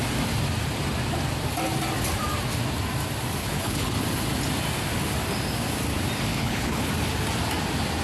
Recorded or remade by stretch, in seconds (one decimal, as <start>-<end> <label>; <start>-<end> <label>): 0.0-3.4 recorded; 3.4-4.0 remade; 4.0-6.3 recorded; 6.3-6.9 remade; 6.9-8.0 recorded